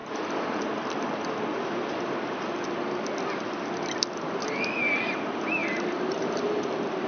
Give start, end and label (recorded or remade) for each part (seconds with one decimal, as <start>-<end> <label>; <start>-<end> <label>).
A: 0.0-1.9 remade; 1.9-7.1 recorded